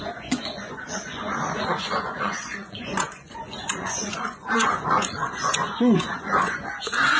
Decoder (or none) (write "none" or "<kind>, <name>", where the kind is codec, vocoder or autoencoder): vocoder, Vocos